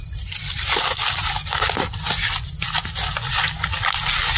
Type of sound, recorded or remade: recorded